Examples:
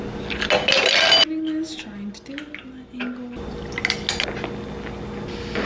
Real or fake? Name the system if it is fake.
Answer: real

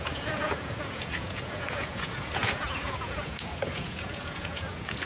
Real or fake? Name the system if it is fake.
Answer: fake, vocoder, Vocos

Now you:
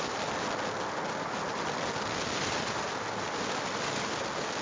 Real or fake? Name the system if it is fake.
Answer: real